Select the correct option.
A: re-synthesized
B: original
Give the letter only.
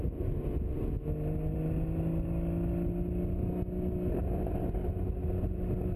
B